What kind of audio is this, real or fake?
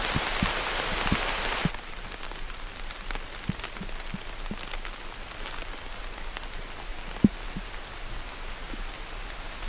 real